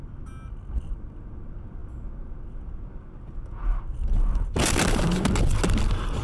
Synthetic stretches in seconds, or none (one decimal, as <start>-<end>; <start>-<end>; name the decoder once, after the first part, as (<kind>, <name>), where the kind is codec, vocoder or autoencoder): none